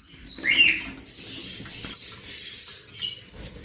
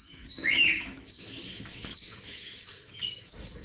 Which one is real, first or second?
first